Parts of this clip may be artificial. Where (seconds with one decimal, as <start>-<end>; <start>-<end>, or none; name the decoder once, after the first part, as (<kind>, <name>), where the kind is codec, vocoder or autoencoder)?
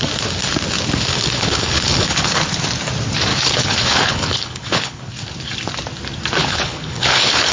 1.1-2.5 (codec, HILCodec); 3.3-5.1; 6.4-7.5